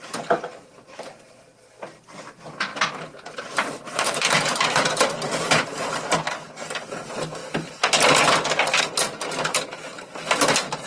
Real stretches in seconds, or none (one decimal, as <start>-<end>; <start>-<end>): 0.0-2.7; 6.1-9.5; 10.1-10.9